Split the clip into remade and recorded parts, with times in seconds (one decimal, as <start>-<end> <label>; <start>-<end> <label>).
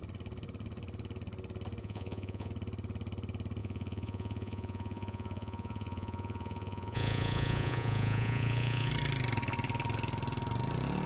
0.0-1.8 recorded; 1.8-2.5 remade; 2.5-3.6 recorded; 3.6-8.9 remade; 8.9-11.1 recorded